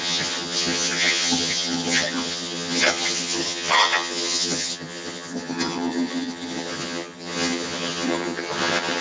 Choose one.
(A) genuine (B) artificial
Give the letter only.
B